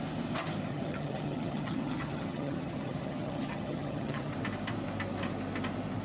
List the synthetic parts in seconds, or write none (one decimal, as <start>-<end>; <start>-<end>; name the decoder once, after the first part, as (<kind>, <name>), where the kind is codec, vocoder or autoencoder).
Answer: 0.7-4.3 (vocoder, HiFi-GAN)